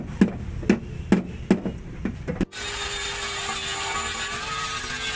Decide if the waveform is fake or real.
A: real